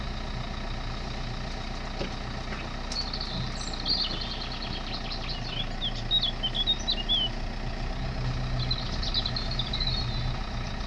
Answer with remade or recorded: recorded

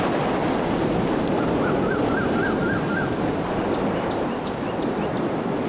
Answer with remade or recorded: recorded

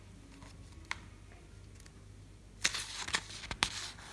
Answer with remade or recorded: recorded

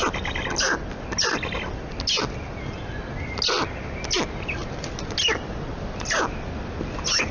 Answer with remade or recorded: recorded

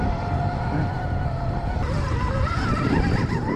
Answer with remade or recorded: remade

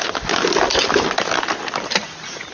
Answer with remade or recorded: recorded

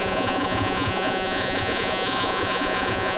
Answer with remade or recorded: remade